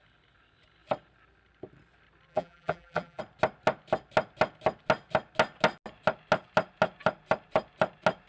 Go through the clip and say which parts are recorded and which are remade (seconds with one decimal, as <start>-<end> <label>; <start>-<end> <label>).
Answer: 0.0-2.3 recorded; 2.3-3.2 remade; 3.2-8.3 recorded